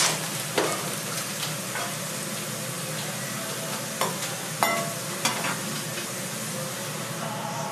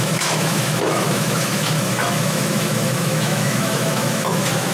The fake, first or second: second